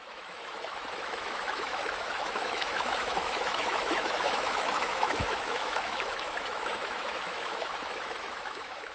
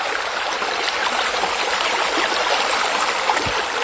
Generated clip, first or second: first